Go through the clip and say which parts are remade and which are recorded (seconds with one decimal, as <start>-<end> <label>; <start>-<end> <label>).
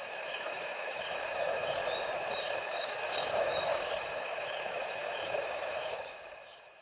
0.0-1.8 remade; 1.8-2.3 recorded; 2.3-6.8 remade